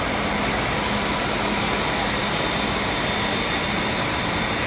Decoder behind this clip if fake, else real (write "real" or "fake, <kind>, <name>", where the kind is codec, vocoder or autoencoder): real